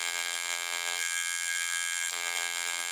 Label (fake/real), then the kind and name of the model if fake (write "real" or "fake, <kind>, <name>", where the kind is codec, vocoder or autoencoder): fake, vocoder, BigVGAN v2